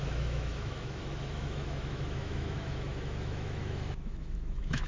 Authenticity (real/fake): fake